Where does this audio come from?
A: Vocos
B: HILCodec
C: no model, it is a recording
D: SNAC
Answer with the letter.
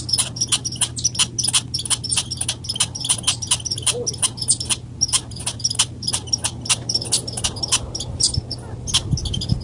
C